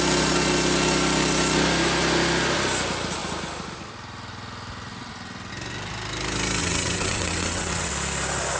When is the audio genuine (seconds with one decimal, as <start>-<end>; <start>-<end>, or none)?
0.0-6.6; 7.9-8.6